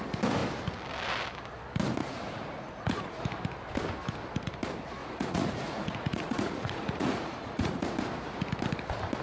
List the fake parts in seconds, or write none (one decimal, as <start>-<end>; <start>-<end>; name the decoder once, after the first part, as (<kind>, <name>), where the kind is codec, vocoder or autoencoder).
2.0-3.2 (vocoder, Vocos); 5.0-7.9